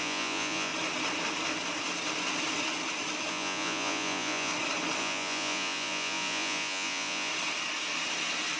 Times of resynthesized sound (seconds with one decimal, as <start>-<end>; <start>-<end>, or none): 0.0-0.7; 3.3-4.5; 5.0-7.3